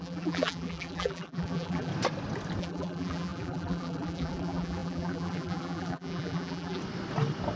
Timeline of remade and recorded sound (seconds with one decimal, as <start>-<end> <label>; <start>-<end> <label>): 0.0-1.9 remade; 1.9-2.6 recorded; 2.6-6.8 remade; 6.8-7.6 recorded